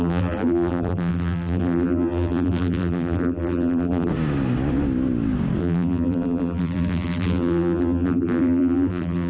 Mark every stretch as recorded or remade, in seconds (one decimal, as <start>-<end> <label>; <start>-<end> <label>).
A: 0.0-4.1 remade; 4.1-5.6 recorded; 5.6-9.3 remade